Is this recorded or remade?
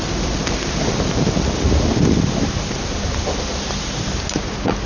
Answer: recorded